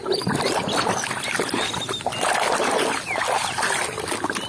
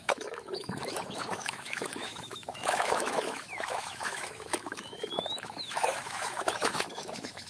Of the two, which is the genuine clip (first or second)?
first